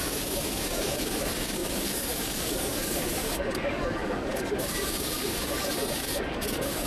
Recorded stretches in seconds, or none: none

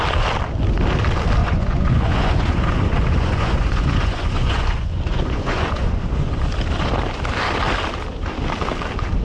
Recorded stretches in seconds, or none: 0.0-1.4; 6.3-9.2

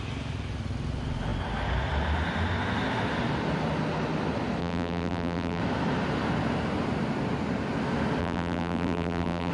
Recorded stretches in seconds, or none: 0.0-4.6; 5.6-8.2

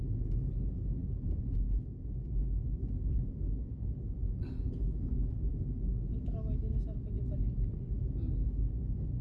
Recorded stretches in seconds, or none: 0.0-9.2

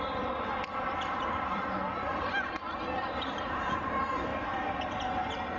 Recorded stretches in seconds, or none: 4.3-5.6

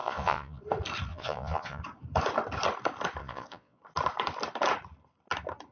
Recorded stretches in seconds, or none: 0.6-1.1; 1.8-3.2; 3.8-5.7

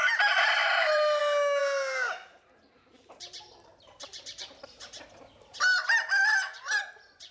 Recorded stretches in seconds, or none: 0.0-0.6; 1.2-1.6; 5.0-7.3

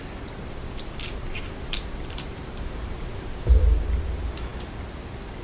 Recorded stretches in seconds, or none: 0.0-1.1; 3.5-5.4